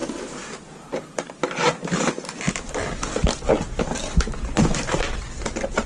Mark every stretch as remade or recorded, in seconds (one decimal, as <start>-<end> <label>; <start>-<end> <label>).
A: 0.0-3.5 remade; 3.5-4.0 recorded; 4.0-4.6 remade; 4.6-5.9 recorded